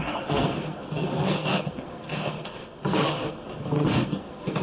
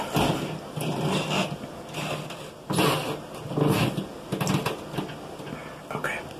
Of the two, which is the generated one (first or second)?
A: first